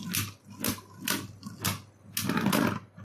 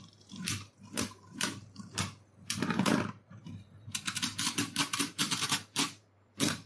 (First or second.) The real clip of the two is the first